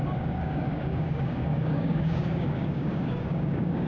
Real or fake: fake